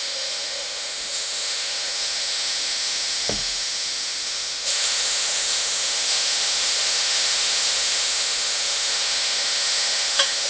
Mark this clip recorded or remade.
remade